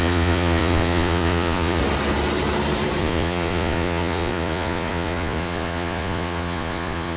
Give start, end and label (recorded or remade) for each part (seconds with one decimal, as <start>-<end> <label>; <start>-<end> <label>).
0.0-1.8 remade; 1.8-3.0 recorded; 3.0-7.2 remade